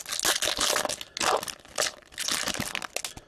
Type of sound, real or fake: real